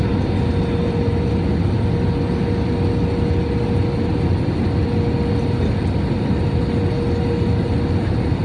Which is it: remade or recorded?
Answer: recorded